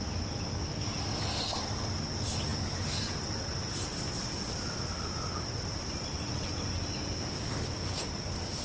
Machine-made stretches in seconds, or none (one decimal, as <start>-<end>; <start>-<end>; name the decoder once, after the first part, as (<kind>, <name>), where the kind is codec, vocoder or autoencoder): none